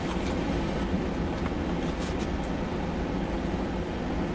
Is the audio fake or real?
fake